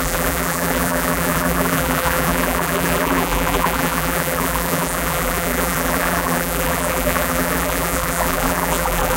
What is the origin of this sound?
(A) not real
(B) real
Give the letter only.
A